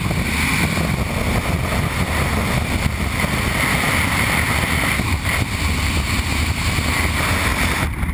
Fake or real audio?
real